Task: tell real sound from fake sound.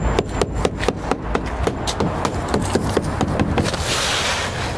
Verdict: real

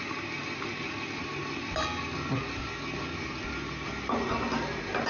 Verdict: real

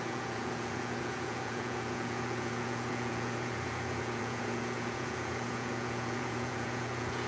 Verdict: fake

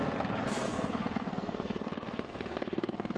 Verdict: fake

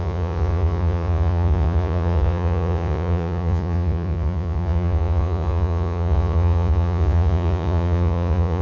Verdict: fake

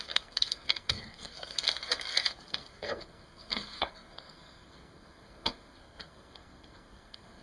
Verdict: fake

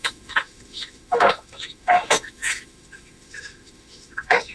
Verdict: fake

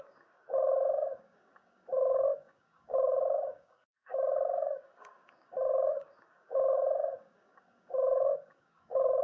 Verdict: fake